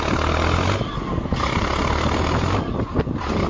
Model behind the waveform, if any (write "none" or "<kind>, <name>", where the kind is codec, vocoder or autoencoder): none